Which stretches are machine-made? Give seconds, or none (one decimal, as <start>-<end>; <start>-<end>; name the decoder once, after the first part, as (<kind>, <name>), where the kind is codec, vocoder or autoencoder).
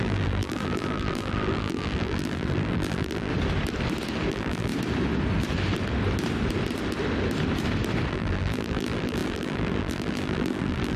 0.0-3.3 (vocoder, BigVGAN v2); 4.3-4.7; 8.1-11.0